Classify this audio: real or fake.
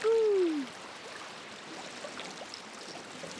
real